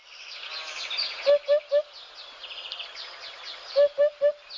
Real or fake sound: real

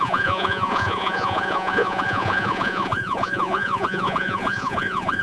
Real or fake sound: fake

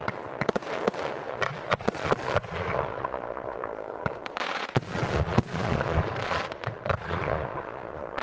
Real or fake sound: fake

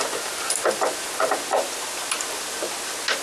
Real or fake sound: real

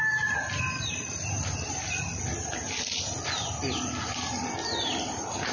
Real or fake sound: real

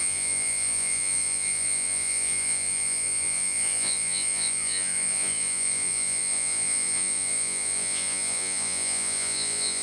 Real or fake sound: fake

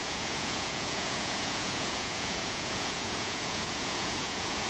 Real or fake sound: fake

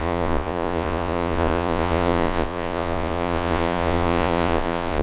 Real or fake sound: fake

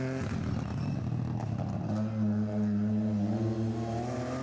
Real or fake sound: real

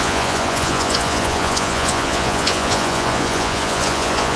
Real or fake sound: fake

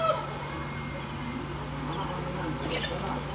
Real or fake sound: real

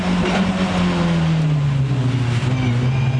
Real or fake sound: real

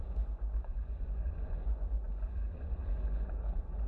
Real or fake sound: fake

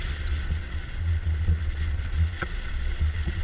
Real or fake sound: fake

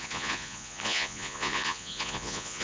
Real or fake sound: fake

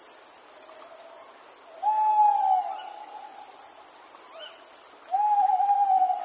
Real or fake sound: real